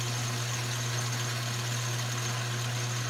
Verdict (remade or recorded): recorded